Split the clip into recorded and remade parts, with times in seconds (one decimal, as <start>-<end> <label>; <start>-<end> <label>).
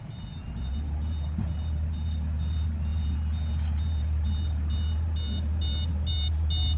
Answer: 0.0-6.8 recorded